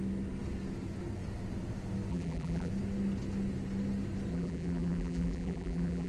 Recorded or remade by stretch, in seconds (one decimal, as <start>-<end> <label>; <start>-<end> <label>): 0.0-2.1 recorded; 2.1-2.7 remade; 2.7-4.3 recorded; 4.3-6.1 remade